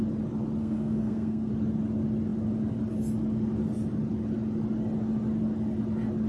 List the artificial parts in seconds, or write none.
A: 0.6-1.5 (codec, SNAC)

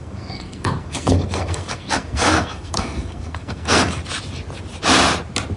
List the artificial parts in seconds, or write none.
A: 0.0-4.0 (codec, SNAC)

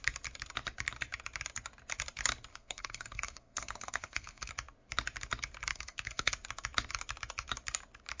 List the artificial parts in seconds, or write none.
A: 2.5-4.5 (codec, SNAC); 5.7-6.3

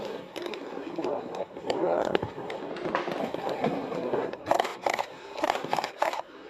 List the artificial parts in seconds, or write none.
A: 0.0-2.7 (codec, SNAC); 3.2-6.5

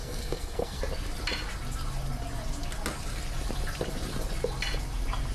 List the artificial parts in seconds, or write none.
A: 0.0-0.8 (codec, SNAC)

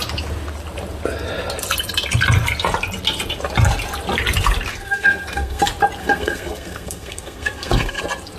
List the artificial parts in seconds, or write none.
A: 4.7-5.6 (codec, SNAC); 6.0-8.0